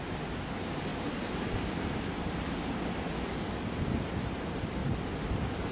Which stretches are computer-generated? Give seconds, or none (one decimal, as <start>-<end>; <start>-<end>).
none